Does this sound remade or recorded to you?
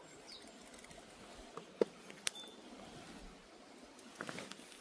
recorded